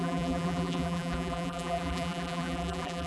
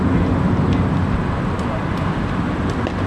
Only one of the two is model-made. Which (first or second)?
first